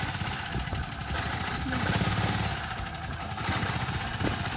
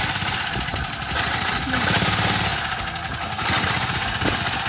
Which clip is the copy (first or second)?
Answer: first